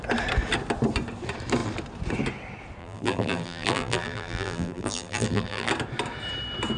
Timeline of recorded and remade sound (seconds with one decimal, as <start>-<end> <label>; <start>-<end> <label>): 0.0-2.8 recorded; 2.8-5.7 remade; 5.7-6.8 recorded